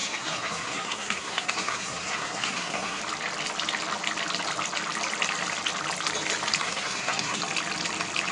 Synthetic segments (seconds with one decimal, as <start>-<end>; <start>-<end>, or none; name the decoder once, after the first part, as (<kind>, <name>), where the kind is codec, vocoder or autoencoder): 0.0-3.0 (codec, SNAC); 6.6-7.4